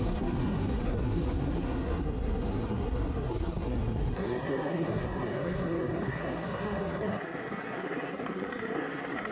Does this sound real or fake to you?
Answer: fake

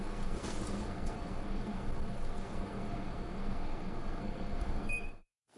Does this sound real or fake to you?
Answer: fake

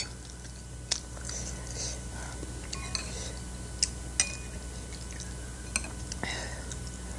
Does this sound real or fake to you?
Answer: real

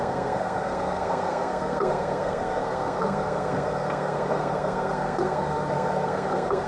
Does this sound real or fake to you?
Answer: fake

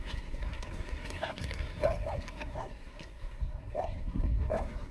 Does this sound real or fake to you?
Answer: fake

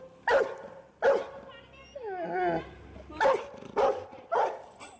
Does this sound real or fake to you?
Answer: real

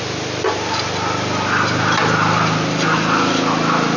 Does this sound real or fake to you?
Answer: real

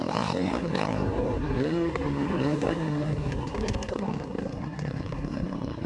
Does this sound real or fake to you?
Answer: fake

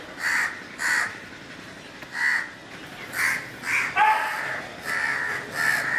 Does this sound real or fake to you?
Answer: real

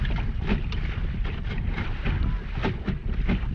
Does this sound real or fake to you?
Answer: real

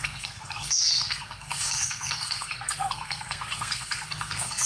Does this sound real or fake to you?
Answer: fake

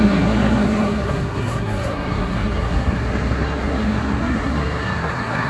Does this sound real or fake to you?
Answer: fake